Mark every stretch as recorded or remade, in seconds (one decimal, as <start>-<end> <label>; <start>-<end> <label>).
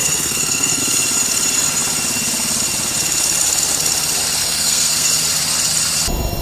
0.0-0.8 remade; 0.8-4.4 recorded; 4.4-5.1 remade; 5.1-6.4 recorded